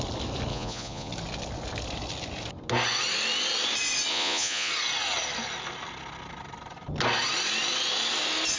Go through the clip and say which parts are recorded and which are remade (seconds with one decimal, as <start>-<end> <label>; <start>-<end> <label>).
0.0-0.5 recorded; 0.5-1.1 remade; 1.1-4.1 recorded; 4.1-4.7 remade; 4.7-8.6 recorded